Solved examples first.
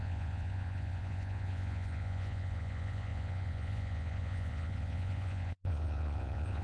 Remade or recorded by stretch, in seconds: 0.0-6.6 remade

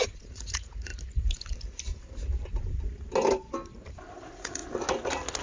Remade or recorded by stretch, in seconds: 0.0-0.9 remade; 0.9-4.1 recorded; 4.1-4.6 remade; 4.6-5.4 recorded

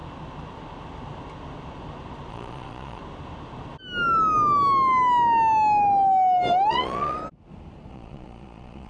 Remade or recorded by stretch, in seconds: 0.0-2.3 recorded; 2.3-3.0 remade; 3.0-6.7 recorded; 6.7-7.2 remade; 7.2-7.9 recorded; 7.9-8.9 remade

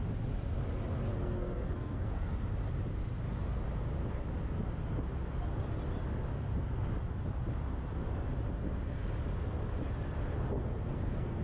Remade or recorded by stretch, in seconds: 0.0-1.1 recorded; 1.1-2.4 remade; 2.4-10.5 recorded; 10.5-11.4 remade